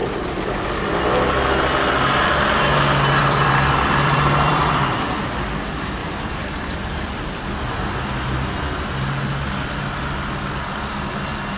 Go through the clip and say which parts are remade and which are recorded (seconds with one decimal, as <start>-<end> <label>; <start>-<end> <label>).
0.0-0.8 remade; 0.8-3.2 recorded; 3.2-5.2 remade; 5.2-6.0 recorded; 6.0-7.3 remade; 7.3-11.6 recorded